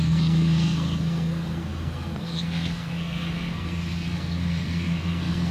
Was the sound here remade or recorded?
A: remade